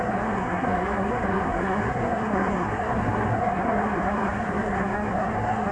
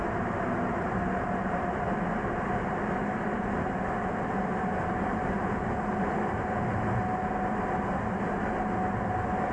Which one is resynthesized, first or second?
first